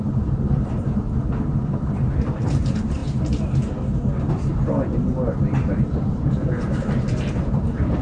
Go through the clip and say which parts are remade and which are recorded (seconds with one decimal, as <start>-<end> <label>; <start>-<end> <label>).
0.0-3.0 remade; 3.0-4.3 recorded; 4.3-8.0 remade